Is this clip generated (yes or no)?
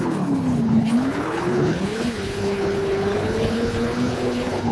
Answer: yes